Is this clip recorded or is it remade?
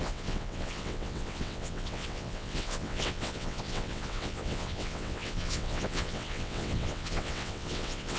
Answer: remade